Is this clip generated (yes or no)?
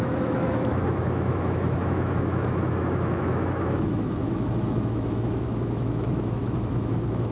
yes